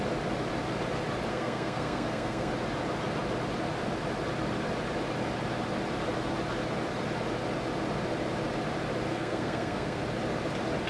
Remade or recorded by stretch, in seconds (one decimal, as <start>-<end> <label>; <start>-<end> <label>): 0.0-1.3 recorded; 1.3-2.5 remade; 2.5-9.1 recorded; 9.1-10.0 remade; 10.0-10.9 recorded